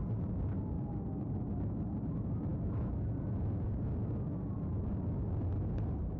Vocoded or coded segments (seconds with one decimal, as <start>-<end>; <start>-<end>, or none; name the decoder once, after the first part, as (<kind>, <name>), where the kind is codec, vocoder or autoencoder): none